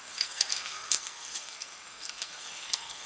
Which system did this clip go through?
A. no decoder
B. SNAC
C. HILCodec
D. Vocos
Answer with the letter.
B